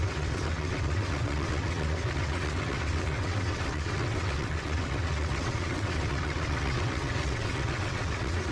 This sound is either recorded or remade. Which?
remade